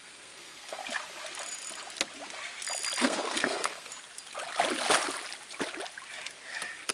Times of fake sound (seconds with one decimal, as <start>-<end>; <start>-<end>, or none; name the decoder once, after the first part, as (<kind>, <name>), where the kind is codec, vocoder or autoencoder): 0.0-0.8 (codec, SNAC); 3.0-3.9

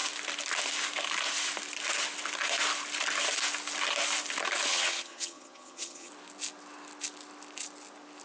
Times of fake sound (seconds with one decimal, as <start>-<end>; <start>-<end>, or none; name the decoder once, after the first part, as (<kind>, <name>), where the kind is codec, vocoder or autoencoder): 4.7-6.1 (vocoder, HiFi-GAN)

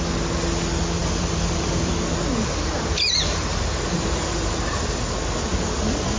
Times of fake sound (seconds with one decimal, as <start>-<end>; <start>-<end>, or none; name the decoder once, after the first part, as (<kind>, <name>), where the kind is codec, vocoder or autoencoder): 1.0-1.9 (vocoder, BigVGAN v2); 3.5-5.0

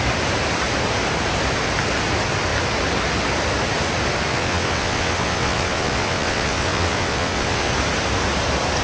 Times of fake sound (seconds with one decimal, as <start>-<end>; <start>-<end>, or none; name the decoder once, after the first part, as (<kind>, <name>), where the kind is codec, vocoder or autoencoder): 4.3-7.7 (vocoder, WaveNeXt)